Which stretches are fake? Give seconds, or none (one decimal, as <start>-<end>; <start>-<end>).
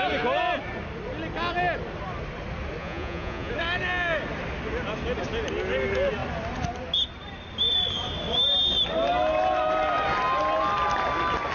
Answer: 2.8-3.5